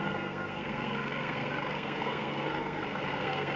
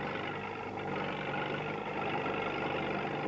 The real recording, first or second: second